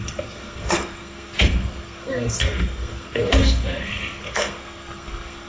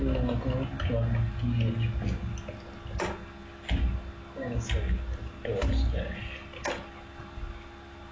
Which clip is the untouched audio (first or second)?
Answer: second